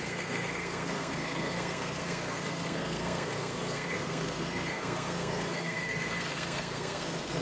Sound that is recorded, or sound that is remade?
remade